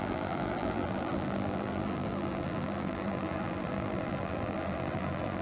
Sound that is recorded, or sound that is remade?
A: remade